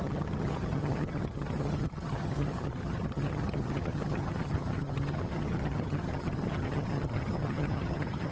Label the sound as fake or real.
fake